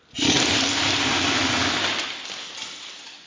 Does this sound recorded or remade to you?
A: recorded